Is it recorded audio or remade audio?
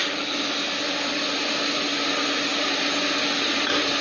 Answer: recorded